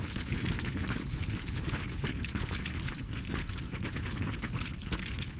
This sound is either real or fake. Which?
fake